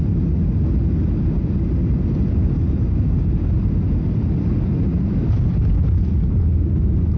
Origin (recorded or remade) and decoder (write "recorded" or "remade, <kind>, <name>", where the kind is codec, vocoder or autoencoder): recorded